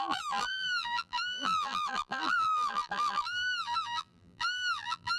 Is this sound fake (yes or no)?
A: yes